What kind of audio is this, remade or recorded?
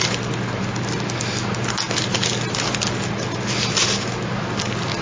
recorded